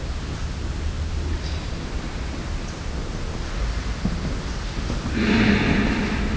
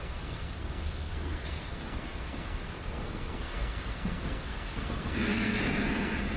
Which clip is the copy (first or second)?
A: second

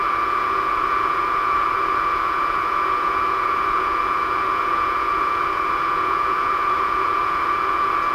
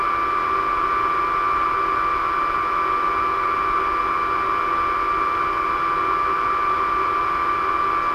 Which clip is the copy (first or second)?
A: first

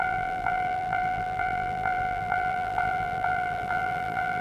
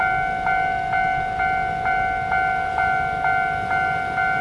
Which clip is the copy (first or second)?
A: first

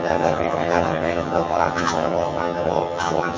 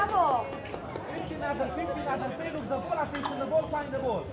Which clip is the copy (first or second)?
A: first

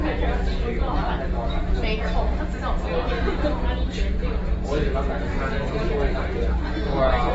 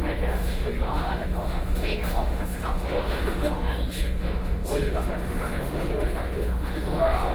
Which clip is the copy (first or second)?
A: second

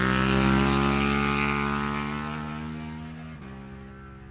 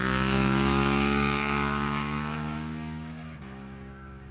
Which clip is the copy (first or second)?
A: second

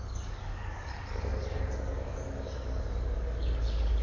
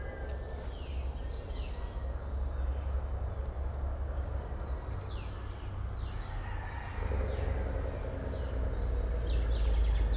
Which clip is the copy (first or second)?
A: first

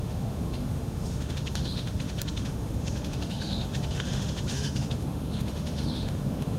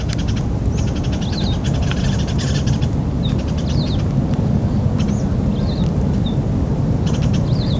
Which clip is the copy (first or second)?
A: first